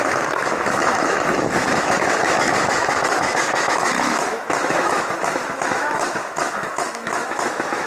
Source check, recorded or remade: remade